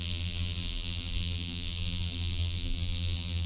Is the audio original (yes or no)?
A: no